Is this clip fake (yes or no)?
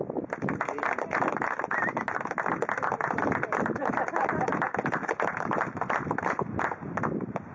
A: no